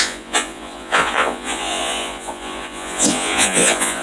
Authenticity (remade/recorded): remade